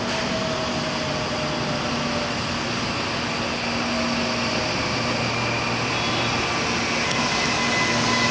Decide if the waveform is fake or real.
real